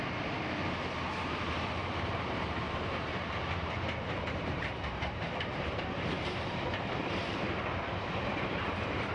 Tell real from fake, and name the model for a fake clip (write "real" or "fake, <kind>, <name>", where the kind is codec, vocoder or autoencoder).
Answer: fake, vocoder, BigVGAN v2